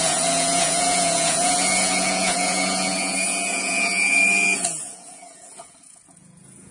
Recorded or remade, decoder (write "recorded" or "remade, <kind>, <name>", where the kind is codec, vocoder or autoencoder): remade, vocoder, Vocos